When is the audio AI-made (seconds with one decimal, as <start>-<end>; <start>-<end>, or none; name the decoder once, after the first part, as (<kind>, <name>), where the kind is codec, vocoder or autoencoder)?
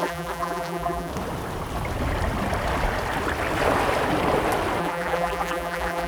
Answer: 0.0-1.1 (vocoder, BigVGAN v2); 4.8-6.1